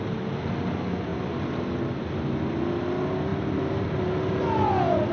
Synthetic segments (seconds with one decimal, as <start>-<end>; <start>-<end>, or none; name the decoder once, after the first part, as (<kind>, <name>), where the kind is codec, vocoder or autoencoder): none